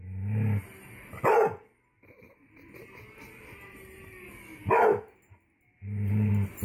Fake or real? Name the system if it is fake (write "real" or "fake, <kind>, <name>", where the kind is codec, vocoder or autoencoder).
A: real